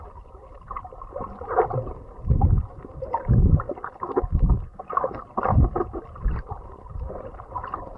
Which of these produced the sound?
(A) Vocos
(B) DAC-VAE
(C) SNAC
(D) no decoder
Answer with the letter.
D